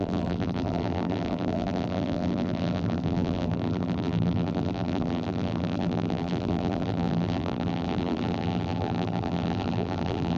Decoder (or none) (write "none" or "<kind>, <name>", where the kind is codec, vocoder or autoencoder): vocoder, BigVGAN v2